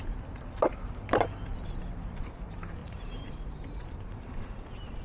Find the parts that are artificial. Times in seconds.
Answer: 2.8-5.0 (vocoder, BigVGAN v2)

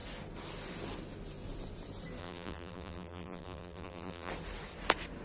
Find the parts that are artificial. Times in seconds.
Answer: 2.2-4.3 (vocoder, BigVGAN v2)